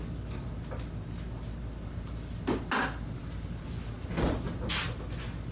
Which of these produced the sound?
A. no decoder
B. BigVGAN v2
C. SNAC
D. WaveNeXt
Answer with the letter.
A